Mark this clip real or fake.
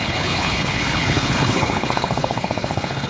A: fake